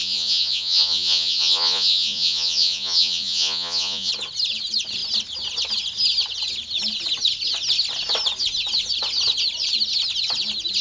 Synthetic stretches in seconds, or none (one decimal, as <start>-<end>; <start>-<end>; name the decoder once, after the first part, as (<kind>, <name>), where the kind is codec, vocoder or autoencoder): 0.0-4.1 (vocoder, Vocos)